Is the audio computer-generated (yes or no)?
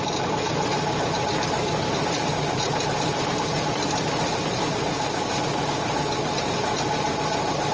no